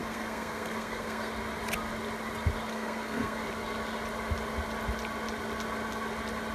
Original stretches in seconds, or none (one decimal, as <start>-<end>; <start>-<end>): 1.3-2.7; 3.4-6.5